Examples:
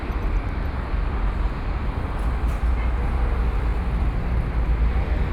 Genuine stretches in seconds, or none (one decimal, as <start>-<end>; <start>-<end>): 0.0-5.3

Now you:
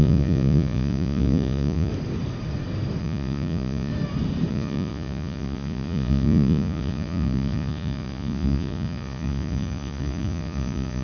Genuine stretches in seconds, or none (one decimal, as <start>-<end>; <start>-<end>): 1.9-3.0; 3.9-4.5

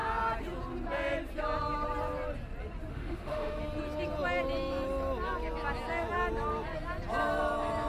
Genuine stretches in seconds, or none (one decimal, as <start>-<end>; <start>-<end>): 0.0-2.9; 3.6-7.9

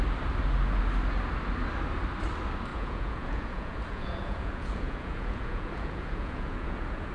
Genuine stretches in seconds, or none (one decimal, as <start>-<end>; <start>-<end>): 0.0-2.7

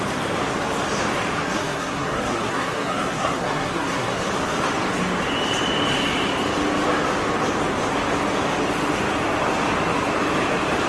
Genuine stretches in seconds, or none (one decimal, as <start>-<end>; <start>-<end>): 0.0-1.4; 4.3-10.9